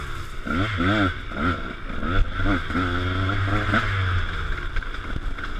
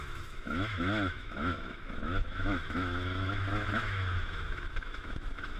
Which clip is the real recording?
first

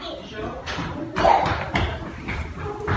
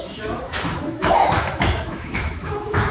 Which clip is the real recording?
first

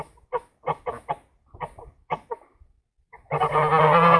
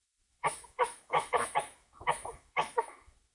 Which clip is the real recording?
first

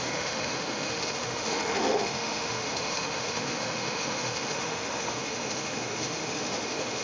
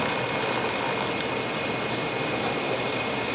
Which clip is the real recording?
second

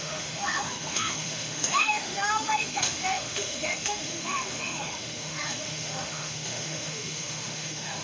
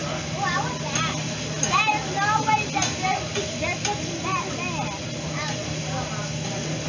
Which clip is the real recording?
second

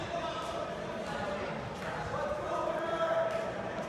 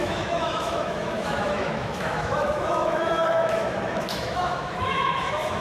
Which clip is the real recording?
first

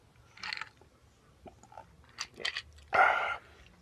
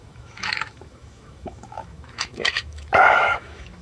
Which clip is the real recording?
first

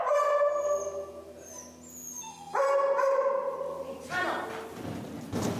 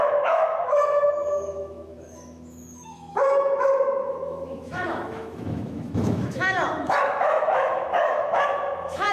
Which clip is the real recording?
first